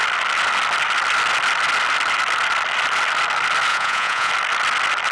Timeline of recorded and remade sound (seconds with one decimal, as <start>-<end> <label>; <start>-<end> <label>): 0.0-3.7 recorded; 3.7-4.3 remade; 4.3-5.1 recorded